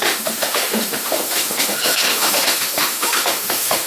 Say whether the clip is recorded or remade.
remade